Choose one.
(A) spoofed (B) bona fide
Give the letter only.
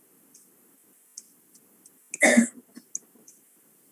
B